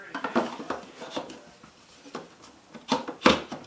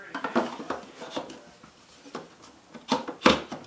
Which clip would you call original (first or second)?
second